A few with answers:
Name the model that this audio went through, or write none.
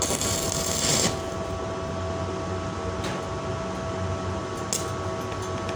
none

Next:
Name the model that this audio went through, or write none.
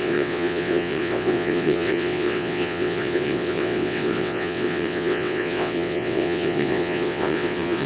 vocoder, WaveNeXt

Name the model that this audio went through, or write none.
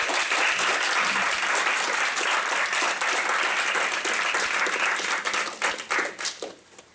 vocoder, BigVGAN v2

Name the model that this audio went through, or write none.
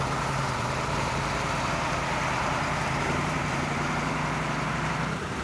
vocoder, BigVGAN v2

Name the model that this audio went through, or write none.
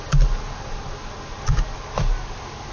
none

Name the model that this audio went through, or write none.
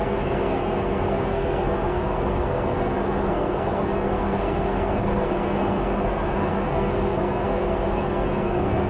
codec, SNAC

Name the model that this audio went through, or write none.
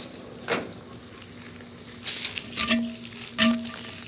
none